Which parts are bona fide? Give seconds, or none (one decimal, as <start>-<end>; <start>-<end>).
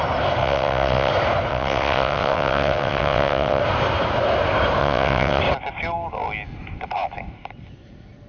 0.0-0.4; 1.1-1.5; 3.6-4.8; 5.4-8.3